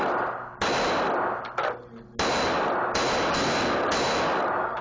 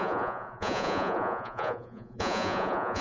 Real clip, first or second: first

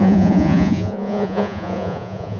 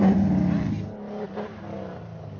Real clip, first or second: second